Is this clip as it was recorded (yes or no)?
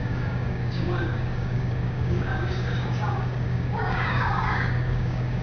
no